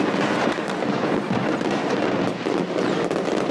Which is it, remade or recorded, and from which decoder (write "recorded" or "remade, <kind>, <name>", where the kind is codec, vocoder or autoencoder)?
recorded